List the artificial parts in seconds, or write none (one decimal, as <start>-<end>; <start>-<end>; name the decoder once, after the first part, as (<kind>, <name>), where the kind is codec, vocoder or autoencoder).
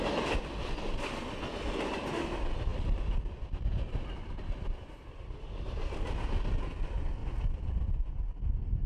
2.7-3.2 (vocoder, BigVGAN v2); 3.7-5.5; 7.2-8.1